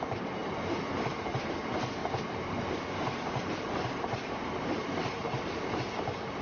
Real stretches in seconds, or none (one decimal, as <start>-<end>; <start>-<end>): 0.0-2.0; 5.8-6.4

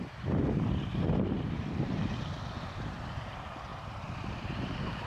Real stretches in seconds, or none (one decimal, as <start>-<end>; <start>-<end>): 0.0-3.7

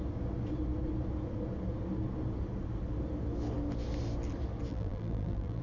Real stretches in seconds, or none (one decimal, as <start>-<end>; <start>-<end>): 0.0-4.7

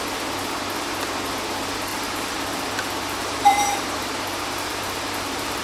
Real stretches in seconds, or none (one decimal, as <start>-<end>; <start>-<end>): 0.0-1.9

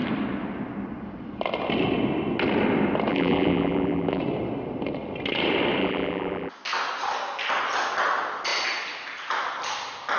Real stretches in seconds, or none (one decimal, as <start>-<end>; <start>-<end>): 0.0-3.1; 4.2-5.8; 6.5-10.2